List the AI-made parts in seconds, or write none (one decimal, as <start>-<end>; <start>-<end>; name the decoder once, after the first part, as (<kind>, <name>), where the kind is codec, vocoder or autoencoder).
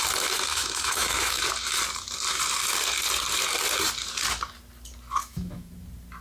0.5-1.4 (autoencoder, DAC-VAE); 5.2-5.7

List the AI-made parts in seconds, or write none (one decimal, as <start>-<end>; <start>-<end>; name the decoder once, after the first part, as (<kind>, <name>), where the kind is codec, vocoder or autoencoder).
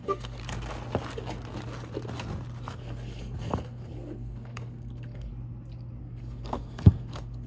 0.0-0.4 (codec, SNAC); 2.7-5.3; 6.0-7.5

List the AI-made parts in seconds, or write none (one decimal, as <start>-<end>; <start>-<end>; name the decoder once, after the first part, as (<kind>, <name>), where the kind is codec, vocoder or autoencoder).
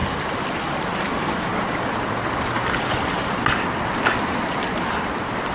0.0-3.3 (vocoder, BigVGAN v2)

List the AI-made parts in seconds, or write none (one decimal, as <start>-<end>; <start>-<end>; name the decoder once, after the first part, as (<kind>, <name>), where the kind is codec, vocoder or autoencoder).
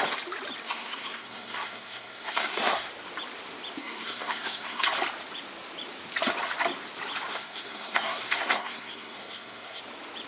0.6-2.9 (codec, SNAC); 3.8-4.8; 7.3-9.8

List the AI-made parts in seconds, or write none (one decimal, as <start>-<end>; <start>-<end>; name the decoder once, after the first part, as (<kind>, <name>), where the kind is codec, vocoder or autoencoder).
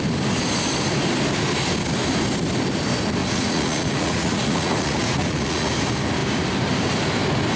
3.2-5.7 (vocoder, Vocos)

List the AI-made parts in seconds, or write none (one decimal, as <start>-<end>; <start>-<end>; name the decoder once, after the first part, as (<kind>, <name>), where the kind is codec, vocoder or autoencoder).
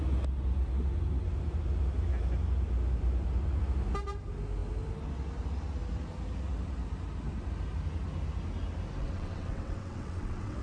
9.0-10.6 (vocoder, WaveNeXt)